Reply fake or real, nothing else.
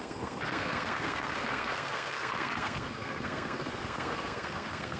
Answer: fake